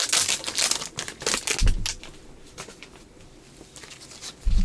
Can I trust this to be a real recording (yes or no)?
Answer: yes